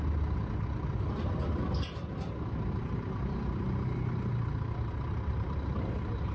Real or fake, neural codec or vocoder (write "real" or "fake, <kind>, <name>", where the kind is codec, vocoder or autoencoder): real